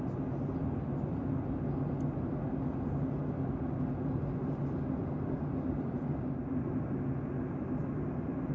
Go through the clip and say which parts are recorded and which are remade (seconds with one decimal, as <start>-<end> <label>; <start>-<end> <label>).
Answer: 0.0-0.6 recorded; 0.6-1.2 remade; 1.2-4.4 recorded; 4.4-6.5 remade; 6.5-8.5 recorded